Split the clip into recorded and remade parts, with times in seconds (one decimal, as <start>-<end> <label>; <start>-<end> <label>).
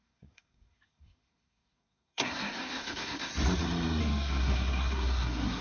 0.0-3.3 remade; 3.3-4.0 recorded; 4.0-5.6 remade